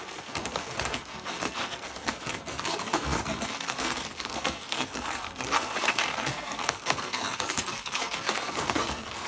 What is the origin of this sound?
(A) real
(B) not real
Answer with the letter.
B